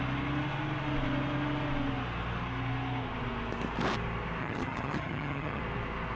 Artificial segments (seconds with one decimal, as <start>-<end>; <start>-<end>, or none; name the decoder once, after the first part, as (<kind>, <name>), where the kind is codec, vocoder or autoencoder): 4.4-5.6 (vocoder, HiFi-GAN)